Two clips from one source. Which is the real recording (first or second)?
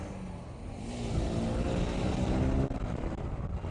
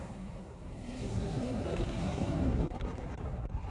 first